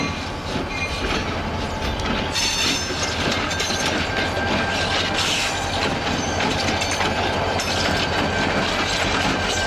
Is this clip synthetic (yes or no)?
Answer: no